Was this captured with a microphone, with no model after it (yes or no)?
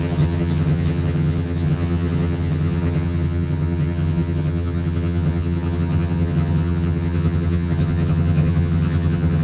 no